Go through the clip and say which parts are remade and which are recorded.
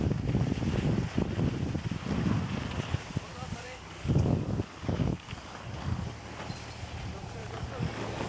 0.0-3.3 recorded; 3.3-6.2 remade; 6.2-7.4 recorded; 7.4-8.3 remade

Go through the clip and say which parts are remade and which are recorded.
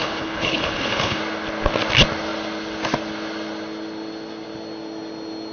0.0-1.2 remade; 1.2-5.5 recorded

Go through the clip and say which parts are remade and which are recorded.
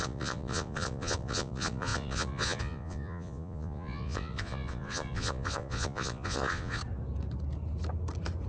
0.0-6.8 remade; 6.8-8.5 recorded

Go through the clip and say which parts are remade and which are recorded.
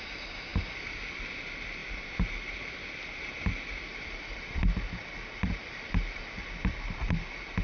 0.0-7.6 recorded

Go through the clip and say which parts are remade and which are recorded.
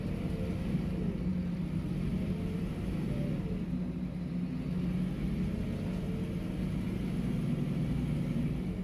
0.0-1.3 recorded; 1.3-2.9 remade; 2.9-8.8 recorded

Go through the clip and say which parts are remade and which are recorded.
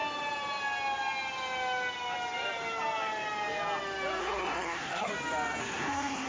0.0-4.2 recorded; 4.2-5.1 remade; 5.1-5.6 recorded; 5.6-6.3 remade